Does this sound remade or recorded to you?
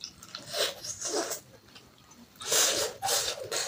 recorded